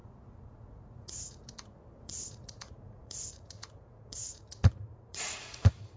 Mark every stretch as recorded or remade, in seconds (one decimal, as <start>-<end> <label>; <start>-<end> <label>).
0.0-1.5 remade; 1.5-2.0 recorded; 2.0-5.6 remade; 5.6-6.0 recorded